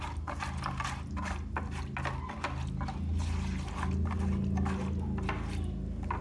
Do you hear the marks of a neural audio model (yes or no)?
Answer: no